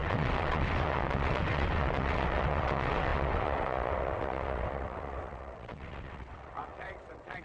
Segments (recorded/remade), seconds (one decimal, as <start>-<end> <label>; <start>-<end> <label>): 0.0-7.4 remade